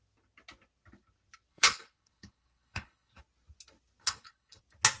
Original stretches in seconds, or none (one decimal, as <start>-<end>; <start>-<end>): 0.0-1.5; 3.2-4.0; 4.6-5.0